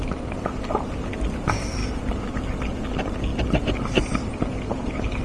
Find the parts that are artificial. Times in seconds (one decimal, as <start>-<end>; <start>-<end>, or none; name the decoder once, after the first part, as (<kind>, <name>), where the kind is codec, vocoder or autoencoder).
none